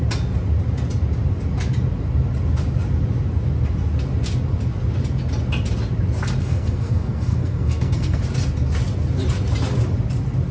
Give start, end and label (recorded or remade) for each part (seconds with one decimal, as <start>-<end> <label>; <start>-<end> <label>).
0.0-6.4 recorded; 6.4-8.2 remade; 8.2-10.5 recorded